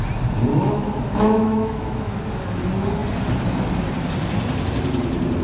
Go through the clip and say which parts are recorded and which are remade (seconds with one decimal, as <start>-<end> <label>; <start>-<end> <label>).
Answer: 0.0-0.5 recorded; 0.5-2.2 remade; 2.2-5.4 recorded